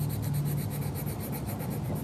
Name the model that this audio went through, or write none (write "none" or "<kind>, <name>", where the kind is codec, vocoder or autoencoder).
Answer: none